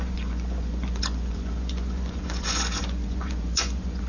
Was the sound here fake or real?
fake